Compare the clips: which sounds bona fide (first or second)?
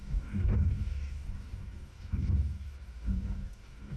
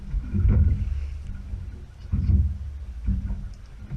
second